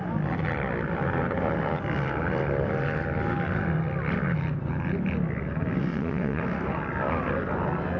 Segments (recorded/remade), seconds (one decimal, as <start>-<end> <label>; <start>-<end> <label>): 0.0-5.9 recorded; 5.9-6.4 remade; 6.4-8.0 recorded

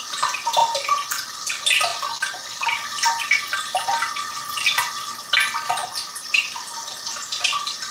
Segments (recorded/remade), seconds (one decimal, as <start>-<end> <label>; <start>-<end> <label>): 0.0-7.9 recorded

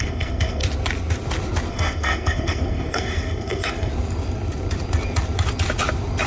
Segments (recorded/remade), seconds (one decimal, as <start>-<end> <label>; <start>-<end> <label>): 0.0-0.6 remade; 0.6-1.7 recorded; 1.7-3.9 remade; 3.9-6.3 recorded

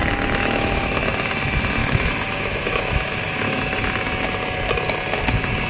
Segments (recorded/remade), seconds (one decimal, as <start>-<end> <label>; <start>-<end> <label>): 0.0-0.8 remade; 0.8-1.8 recorded; 1.8-3.6 remade; 3.6-5.7 recorded

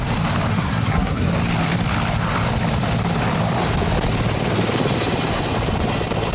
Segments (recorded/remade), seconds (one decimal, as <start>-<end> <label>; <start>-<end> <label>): 0.0-0.5 recorded; 0.5-1.3 remade; 1.3-6.3 recorded

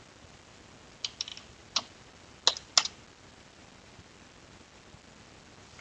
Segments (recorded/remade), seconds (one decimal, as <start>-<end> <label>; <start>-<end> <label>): 0.0-5.8 recorded

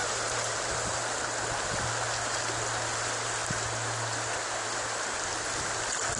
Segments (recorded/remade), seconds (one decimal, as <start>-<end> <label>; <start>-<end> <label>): 0.0-6.2 recorded